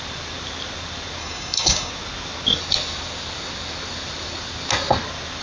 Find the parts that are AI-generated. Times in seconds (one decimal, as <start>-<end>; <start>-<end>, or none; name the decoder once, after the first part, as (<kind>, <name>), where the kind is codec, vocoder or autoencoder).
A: 1.2-1.9 (codec, DAC)